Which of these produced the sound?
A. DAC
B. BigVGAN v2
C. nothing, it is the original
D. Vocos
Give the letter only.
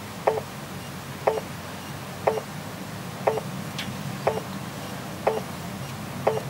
C